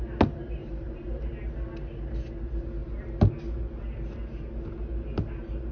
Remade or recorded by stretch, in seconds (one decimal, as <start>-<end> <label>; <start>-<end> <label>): 0.0-0.6 recorded; 0.6-1.3 remade; 1.3-5.7 recorded